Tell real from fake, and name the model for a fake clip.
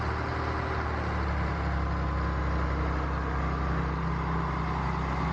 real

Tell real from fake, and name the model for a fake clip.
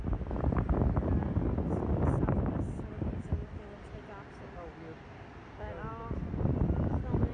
real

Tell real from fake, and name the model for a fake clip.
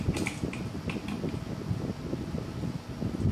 real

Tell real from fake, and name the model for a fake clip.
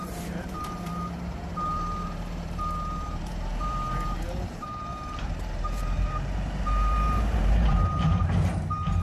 fake, vocoder, BigVGAN v2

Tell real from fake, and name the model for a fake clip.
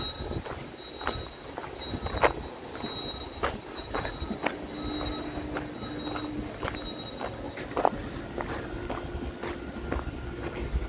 real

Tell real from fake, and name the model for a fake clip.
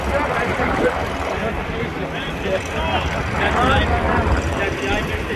real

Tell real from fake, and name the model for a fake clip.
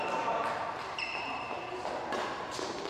fake, vocoder, BigVGAN v2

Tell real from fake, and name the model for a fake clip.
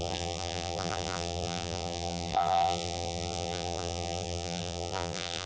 fake, vocoder, BigVGAN v2